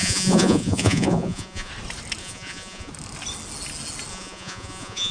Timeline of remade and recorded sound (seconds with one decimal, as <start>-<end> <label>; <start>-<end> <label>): 0.0-1.7 remade; 1.7-2.2 recorded; 2.2-2.9 remade; 2.9-4.1 recorded; 4.1-5.1 remade